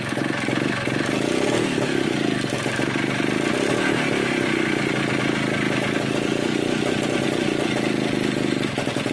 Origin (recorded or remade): recorded